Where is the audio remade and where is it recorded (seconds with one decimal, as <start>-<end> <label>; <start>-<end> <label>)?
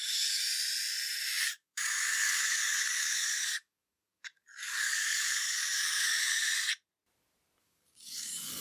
0.0-0.4 remade; 0.4-1.5 recorded; 1.5-6.4 remade; 6.4-7.6 recorded; 7.6-8.6 remade